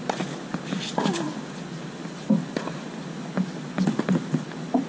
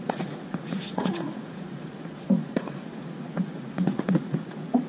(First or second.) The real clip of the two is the first